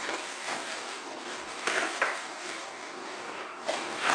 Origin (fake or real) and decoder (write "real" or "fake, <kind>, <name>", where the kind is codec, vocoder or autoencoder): fake, codec, DAC